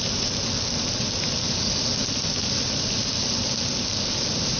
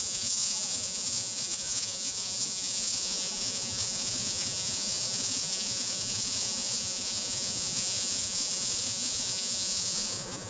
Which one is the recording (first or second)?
first